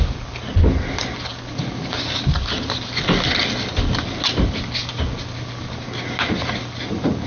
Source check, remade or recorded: recorded